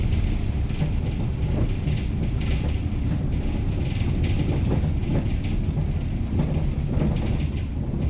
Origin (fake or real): real